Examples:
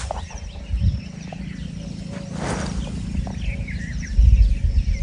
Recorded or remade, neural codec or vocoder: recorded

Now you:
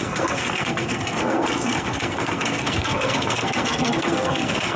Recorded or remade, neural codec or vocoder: remade, codec, SNAC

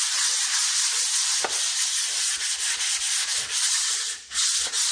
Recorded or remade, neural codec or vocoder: recorded